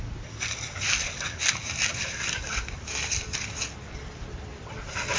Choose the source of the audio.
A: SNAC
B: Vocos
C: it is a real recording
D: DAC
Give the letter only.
C